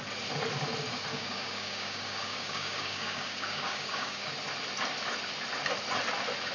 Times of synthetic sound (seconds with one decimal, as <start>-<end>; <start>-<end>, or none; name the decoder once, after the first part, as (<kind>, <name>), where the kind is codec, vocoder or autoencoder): 1.1-4.3 (codec, DAC)